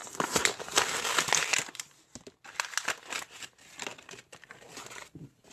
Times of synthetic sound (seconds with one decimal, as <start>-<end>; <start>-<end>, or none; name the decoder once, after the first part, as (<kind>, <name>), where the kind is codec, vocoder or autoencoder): 0.0-0.8 (vocoder, BigVGAN v2); 3.9-4.5